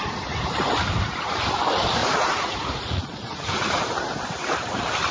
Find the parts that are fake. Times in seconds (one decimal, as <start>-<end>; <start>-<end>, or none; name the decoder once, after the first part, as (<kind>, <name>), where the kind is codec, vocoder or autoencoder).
2.0-3.9 (vocoder, Vocos)

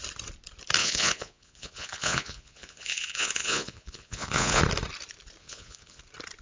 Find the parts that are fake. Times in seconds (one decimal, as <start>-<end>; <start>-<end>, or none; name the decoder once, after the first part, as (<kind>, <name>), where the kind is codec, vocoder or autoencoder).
0.8-4.6 (vocoder, Vocos); 5.4-6.0

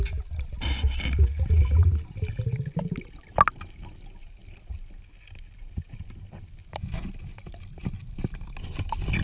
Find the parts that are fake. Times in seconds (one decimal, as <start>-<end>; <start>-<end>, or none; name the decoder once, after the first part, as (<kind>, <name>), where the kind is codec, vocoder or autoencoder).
none

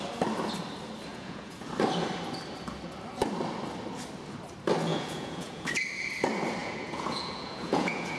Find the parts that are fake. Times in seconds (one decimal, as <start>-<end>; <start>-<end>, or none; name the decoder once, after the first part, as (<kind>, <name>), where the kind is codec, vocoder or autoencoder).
1.1-1.7 (vocoder, Vocos); 4.9-5.7; 6.6-8.2

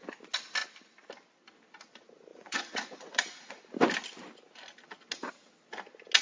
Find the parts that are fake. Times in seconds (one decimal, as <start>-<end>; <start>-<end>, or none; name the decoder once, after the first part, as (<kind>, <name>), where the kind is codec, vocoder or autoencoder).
2.3-3.6 (vocoder, Vocos)

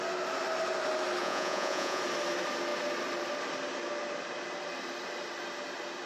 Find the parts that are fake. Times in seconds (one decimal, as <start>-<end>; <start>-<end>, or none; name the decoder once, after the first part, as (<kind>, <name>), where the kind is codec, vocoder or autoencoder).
1.2-2.0 (vocoder, Vocos)

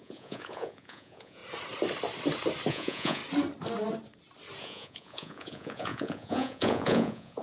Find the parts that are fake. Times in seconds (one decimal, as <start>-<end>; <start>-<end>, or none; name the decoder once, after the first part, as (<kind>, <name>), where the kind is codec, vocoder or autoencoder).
0.0-1.4 (vocoder, Vocos); 2.7-3.2; 4.6-7.4